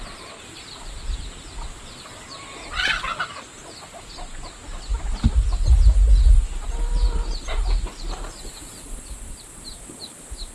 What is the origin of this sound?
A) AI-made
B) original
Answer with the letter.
B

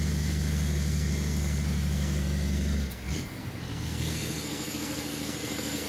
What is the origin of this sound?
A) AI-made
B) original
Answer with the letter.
A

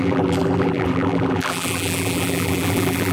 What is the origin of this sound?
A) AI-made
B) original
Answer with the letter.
A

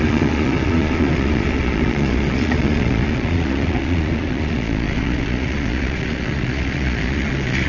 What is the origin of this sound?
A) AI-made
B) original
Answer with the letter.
A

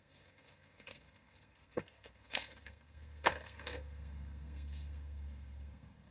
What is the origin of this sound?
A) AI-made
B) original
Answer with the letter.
A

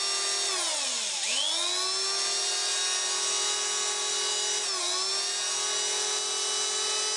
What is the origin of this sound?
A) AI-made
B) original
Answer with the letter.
B